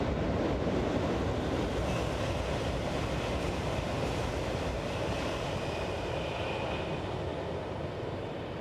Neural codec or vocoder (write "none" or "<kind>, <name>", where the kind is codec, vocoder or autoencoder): none